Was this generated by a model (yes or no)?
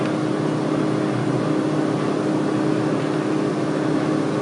no